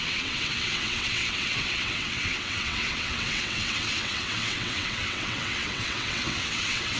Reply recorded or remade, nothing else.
remade